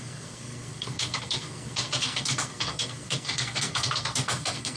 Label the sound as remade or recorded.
remade